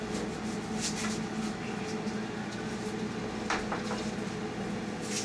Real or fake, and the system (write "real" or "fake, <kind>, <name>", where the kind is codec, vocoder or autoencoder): real